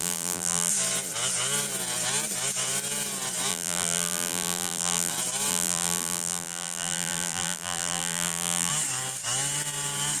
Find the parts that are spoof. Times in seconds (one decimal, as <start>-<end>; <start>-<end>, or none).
0.0-0.7; 3.5-5.1; 5.5-8.7